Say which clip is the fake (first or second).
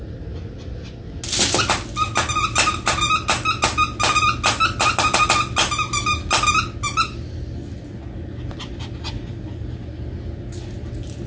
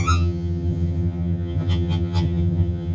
second